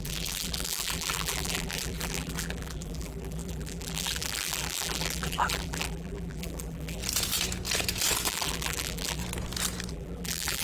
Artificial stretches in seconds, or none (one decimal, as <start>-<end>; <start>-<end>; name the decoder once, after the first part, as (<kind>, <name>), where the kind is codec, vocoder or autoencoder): 0.0-7.0 (vocoder, BigVGAN v2); 8.3-9.2; 9.9-10.6